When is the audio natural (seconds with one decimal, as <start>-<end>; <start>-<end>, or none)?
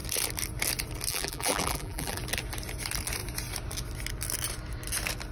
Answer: 0.0-1.1; 2.2-5.3